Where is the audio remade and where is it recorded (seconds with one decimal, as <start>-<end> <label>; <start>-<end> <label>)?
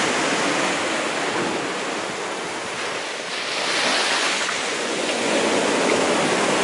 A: 0.0-3.9 recorded; 3.9-5.7 remade; 5.7-6.6 recorded